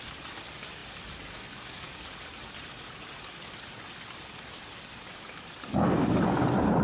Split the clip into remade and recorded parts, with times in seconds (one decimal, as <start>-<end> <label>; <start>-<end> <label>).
0.0-6.8 recorded